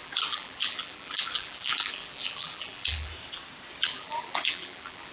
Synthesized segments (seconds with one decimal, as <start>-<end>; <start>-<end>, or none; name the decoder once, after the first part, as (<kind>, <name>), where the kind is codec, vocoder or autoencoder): 0.0-3.1 (vocoder, BigVGAN v2); 3.8-5.1